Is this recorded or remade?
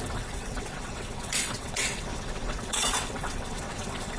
remade